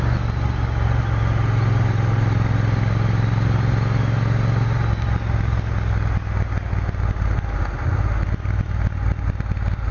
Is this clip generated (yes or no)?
no